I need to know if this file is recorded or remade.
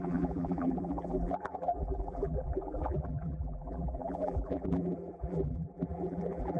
remade